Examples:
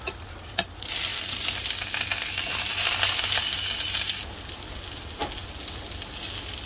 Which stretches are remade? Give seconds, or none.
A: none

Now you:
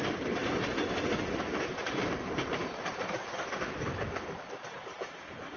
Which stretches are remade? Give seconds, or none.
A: none

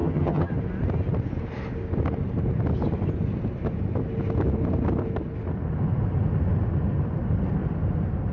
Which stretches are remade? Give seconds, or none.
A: 0.0-0.5

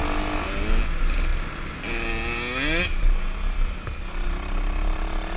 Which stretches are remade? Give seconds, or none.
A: none

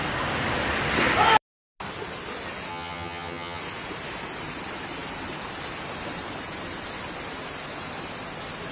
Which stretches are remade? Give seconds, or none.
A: 2.7-3.6